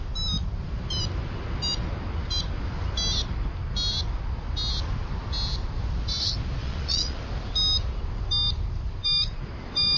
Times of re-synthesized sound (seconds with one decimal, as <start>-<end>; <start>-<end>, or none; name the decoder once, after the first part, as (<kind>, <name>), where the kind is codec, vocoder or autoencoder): 6.6-7.2 (vocoder, Vocos)

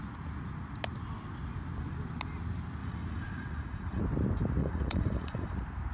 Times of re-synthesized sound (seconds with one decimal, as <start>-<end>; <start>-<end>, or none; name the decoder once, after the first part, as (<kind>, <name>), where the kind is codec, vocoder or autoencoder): 2.8-4.0 (vocoder, Vocos); 4.6-5.5

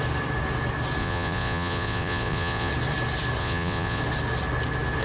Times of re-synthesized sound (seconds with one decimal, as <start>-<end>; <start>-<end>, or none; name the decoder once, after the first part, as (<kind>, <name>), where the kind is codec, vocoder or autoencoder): 1.0-2.7 (vocoder, Vocos); 3.4-4.0

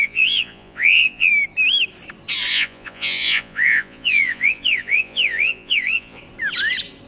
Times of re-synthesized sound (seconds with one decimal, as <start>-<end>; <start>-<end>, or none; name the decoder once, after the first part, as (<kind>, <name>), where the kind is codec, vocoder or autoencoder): 0.0-1.3 (vocoder, Vocos); 2.5-6.2